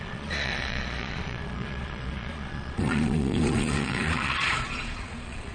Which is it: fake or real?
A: fake